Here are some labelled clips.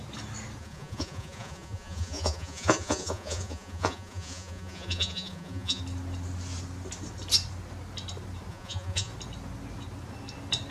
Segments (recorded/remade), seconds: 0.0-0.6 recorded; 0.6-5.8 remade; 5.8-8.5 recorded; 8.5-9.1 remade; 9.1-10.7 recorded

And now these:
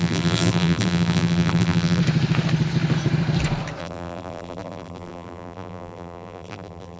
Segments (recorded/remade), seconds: 0.0-2.0 remade; 2.0-3.8 recorded; 3.8-7.0 remade

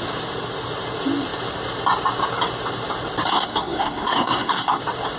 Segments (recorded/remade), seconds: 0.0-3.3 recorded; 3.3-4.8 remade; 4.8-5.2 recorded

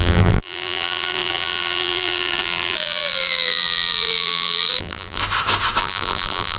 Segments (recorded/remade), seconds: 0.0-5.2 remade; 5.2-5.8 recorded; 5.8-6.6 remade

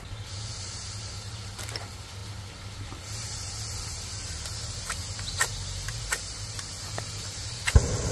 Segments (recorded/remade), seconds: 0.0-8.1 recorded

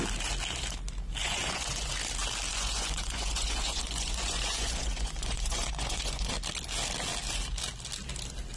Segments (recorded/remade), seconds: 0.0-1.2 recorded; 1.2-1.9 remade; 1.9-2.5 recorded; 2.5-6.3 remade; 6.3-8.6 recorded